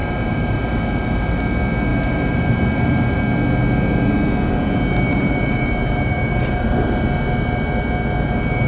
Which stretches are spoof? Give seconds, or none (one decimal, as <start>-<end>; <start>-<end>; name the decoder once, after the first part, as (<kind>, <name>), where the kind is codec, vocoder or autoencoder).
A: 0.0-1.4 (vocoder, BigVGAN v2); 1.9-3.2; 5.1-6.9